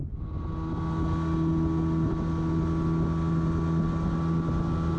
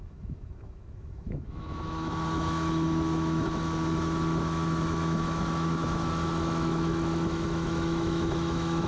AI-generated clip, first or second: second